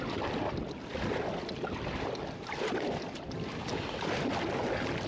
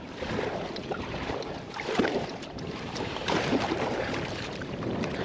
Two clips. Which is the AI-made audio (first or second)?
second